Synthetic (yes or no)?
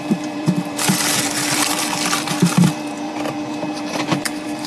yes